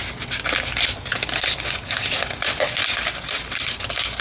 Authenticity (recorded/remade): recorded